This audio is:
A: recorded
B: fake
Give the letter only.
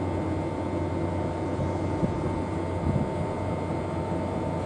A